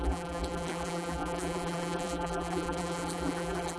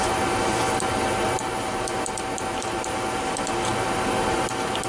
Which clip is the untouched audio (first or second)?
second